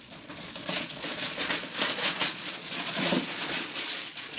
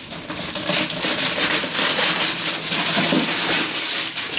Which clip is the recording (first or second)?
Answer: second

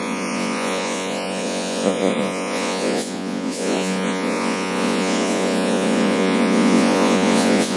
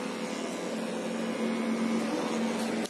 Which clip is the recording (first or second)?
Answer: second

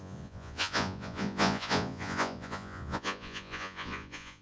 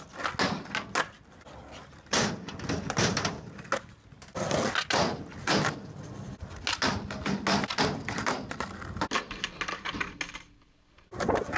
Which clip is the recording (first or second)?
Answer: second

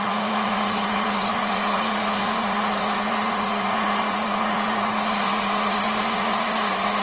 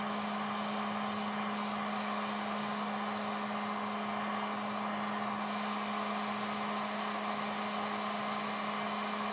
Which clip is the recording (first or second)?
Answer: second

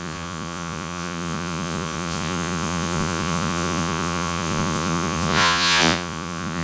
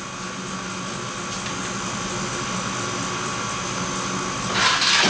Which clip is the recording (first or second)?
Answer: second